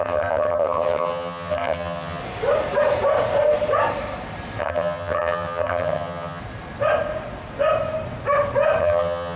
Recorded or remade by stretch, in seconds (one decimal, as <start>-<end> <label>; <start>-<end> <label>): 0.0-2.2 remade; 2.2-4.6 recorded; 4.6-6.4 remade; 6.4-8.8 recorded; 8.8-9.4 remade